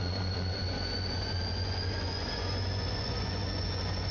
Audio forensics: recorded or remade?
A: remade